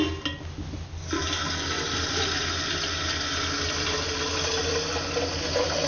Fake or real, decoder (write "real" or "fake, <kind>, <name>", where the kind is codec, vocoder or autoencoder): real